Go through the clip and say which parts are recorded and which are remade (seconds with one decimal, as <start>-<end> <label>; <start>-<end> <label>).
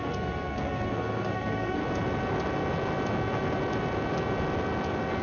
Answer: 0.0-1.8 remade; 1.8-5.2 recorded